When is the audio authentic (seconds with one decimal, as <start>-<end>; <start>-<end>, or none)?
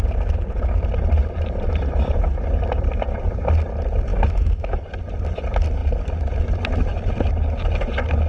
0.0-4.1; 4.8-8.3